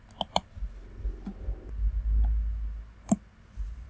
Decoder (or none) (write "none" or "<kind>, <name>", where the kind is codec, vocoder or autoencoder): none